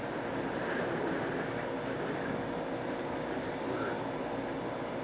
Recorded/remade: recorded